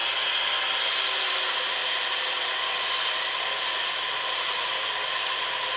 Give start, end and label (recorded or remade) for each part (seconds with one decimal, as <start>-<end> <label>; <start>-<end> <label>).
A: 0.0-5.8 recorded